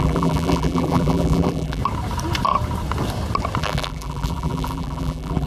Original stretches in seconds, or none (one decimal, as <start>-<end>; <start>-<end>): 1.8-3.6